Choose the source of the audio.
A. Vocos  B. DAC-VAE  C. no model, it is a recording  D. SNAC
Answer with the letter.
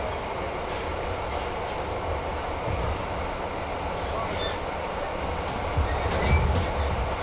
C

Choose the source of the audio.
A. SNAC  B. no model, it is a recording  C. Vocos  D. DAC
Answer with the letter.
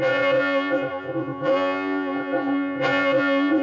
C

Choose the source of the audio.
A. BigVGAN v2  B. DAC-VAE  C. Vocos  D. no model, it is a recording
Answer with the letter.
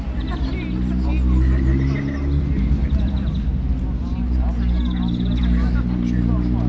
D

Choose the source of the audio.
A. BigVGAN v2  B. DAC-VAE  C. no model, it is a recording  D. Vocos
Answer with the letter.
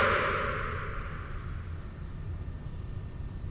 A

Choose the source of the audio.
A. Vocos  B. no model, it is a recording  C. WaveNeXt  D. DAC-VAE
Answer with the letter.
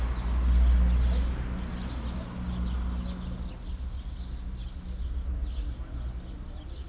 B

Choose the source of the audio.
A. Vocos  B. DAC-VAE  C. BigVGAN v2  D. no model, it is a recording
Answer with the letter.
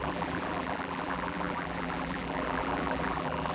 C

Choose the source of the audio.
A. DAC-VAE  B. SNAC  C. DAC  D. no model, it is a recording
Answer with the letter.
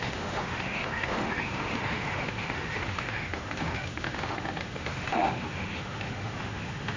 A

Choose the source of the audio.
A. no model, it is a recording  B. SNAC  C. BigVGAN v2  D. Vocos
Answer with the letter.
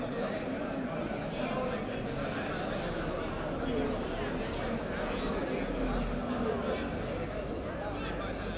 A